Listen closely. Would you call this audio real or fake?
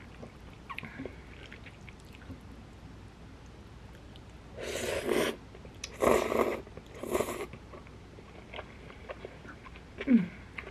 real